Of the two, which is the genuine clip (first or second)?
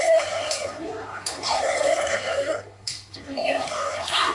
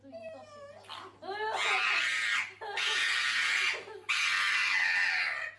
second